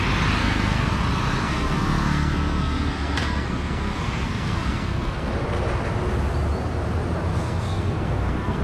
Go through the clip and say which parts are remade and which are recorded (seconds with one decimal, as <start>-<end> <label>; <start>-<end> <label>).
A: 0.0-0.4 recorded; 0.4-0.9 remade; 0.9-1.4 recorded; 1.4-5.3 remade; 5.3-7.3 recorded; 7.3-8.6 remade